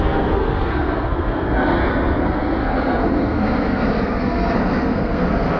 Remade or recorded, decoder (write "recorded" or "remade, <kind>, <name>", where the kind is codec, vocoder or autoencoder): remade, codec, SNAC